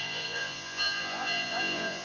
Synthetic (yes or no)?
yes